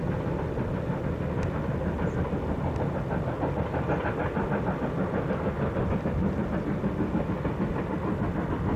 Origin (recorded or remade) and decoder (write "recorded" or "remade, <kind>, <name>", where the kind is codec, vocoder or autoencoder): recorded